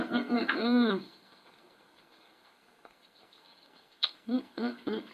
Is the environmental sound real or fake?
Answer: fake